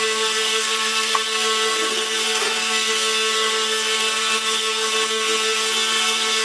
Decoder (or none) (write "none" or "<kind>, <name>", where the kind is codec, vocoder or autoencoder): codec, SNAC